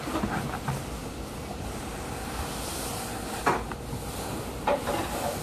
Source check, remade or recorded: recorded